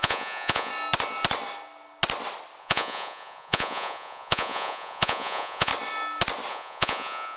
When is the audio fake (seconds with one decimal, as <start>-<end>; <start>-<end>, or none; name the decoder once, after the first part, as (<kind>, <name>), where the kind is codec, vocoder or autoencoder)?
0.0-0.7 (vocoder, Vocos); 2.6-5.7; 6.5-7.4

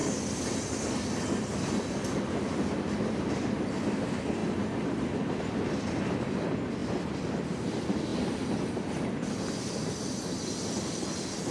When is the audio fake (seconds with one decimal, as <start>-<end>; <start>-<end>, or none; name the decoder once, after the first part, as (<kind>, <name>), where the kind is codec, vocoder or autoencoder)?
none

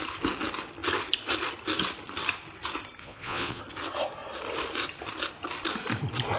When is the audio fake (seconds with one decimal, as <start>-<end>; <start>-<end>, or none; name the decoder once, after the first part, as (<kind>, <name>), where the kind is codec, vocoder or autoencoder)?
3.0-3.6 (vocoder, Vocos)

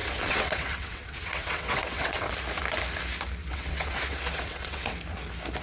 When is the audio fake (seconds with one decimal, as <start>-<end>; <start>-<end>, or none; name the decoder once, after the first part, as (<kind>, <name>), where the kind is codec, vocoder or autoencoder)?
0.0-2.3 (vocoder, WaveNeXt); 3.4-4.9

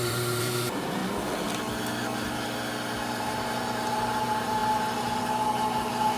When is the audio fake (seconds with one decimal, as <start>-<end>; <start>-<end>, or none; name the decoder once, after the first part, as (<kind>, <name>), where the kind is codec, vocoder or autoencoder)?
0.0-1.0 (vocoder, BigVGAN v2); 3.2-6.2

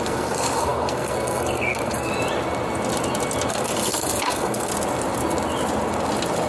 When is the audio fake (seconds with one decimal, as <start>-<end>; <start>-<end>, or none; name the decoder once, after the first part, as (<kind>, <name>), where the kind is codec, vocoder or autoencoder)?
0.0-2.1 (codec, SNAC); 3.5-4.7